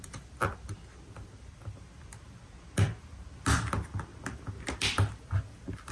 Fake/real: real